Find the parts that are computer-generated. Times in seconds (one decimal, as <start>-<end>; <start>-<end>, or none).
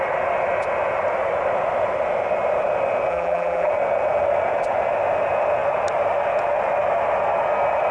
3.1-3.7